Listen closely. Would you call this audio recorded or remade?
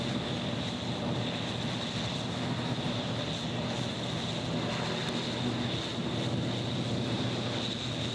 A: recorded